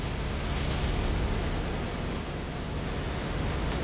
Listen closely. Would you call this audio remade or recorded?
recorded